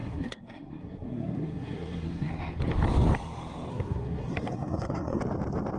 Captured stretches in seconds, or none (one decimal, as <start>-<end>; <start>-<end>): 2.3-3.7; 5.2-5.8